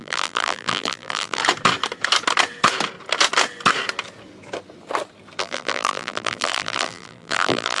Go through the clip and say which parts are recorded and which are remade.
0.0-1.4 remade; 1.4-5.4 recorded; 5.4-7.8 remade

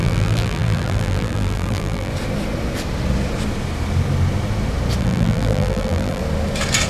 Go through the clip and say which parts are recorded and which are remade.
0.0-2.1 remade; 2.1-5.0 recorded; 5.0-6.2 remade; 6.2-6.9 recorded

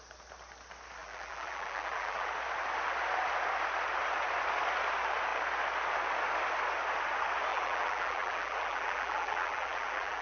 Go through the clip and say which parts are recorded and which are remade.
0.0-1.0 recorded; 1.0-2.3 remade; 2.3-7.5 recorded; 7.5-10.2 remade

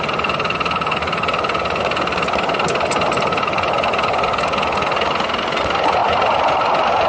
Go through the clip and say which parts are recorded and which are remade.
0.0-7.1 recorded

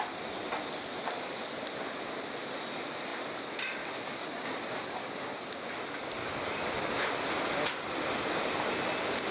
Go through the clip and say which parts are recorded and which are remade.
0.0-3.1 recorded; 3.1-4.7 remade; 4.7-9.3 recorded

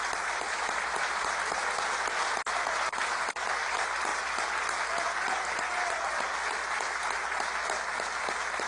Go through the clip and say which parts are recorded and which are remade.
0.0-2.2 remade; 2.2-2.9 recorded; 2.9-4.1 remade; 4.1-8.7 recorded

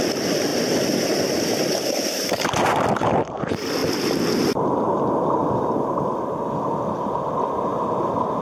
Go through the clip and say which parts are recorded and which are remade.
0.0-5.4 recorded; 5.4-6.2 remade; 6.2-7.7 recorded; 7.7-8.4 remade

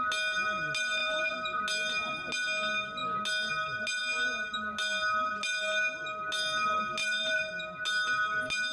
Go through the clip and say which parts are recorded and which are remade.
0.0-1.0 recorded; 1.0-1.6 remade; 1.6-7.0 recorded; 7.0-7.5 remade; 7.5-8.7 recorded